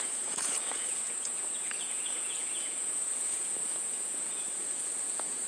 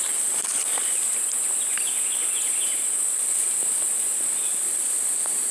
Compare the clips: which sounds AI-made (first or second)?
first